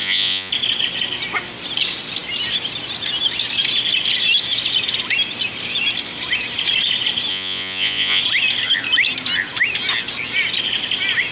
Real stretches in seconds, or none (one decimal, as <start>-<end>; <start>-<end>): 0.5-7.3; 8.2-11.3